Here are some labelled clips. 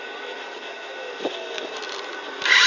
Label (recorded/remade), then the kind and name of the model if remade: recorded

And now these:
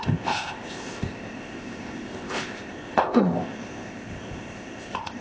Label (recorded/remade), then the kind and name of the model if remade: remade, codec, ZipCodec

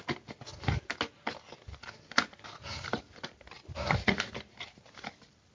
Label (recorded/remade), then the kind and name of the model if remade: recorded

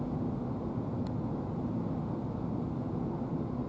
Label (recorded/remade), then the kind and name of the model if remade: recorded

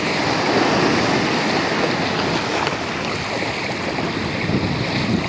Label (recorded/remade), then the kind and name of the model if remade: recorded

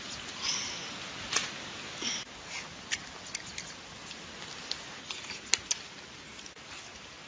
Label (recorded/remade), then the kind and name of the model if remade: recorded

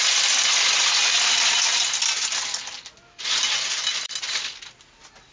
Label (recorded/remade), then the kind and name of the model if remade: recorded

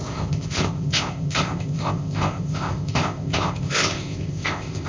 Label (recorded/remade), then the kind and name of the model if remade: remade, codec, ZipCodec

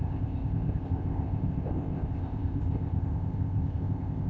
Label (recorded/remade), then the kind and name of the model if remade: remade, codec, ZipCodec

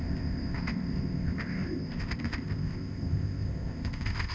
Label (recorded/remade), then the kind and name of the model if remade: remade, codec, ZipCodec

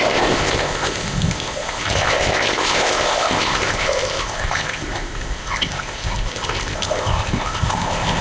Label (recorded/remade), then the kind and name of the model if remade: remade, codec, ZipCodec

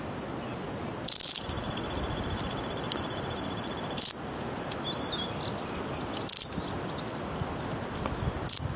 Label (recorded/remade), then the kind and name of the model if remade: recorded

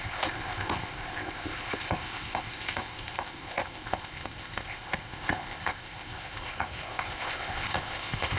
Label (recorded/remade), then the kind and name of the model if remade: remade, codec, ZipCodec